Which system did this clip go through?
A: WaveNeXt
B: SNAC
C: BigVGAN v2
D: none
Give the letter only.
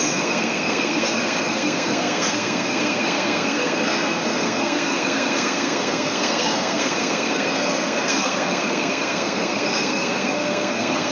B